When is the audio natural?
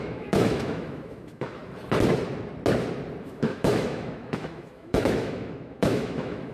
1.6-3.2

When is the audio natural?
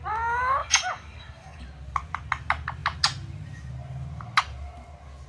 0.0-0.6; 1.6-5.3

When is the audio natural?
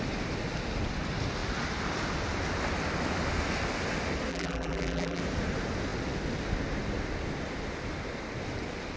0.0-4.3; 5.2-9.0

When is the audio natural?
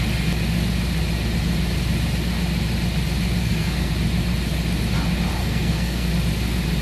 0.0-3.4; 3.9-5.4; 6.1-6.8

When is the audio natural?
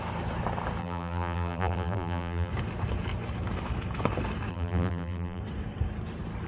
0.0-0.8; 2.5-4.5; 5.4-6.5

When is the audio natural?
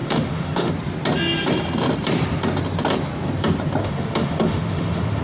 0.7-3.8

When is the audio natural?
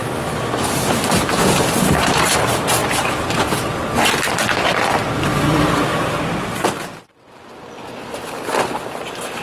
0.0-2.8; 3.6-5.9; 7.0-9.4